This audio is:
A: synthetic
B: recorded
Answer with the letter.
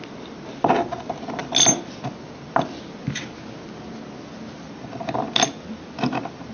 B